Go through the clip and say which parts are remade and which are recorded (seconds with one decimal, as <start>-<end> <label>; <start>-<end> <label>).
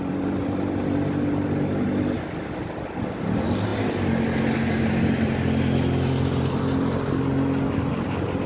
0.0-8.5 recorded